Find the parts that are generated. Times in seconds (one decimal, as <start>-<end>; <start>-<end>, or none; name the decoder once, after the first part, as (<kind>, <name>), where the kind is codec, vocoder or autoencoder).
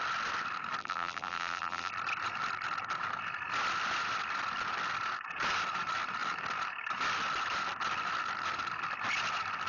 0.8-1.9 (vocoder, BigVGAN v2)